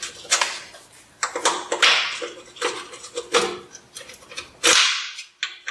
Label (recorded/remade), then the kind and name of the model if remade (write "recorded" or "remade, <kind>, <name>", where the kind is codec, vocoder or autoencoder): recorded